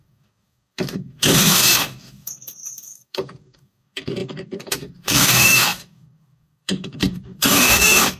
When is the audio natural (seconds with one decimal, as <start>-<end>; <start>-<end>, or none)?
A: none